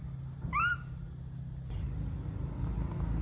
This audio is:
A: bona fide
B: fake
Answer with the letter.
A